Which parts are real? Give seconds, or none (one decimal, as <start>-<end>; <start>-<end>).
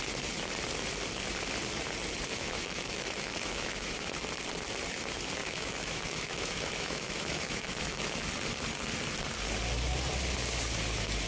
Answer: 0.0-2.3; 4.1-5.4; 8.2-11.3